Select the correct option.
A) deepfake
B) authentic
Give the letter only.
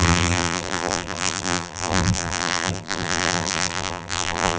A